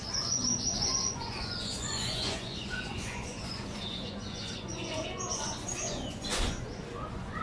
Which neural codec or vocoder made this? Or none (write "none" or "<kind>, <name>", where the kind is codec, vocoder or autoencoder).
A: vocoder, Vocos